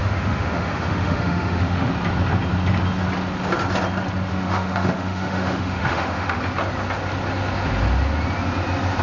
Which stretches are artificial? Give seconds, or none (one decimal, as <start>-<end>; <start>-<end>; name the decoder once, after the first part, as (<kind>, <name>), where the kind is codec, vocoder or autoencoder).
0.0-1.9 (autoencoder, DAC-VAE); 4.3-6.4